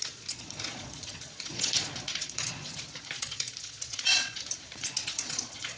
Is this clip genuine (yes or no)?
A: no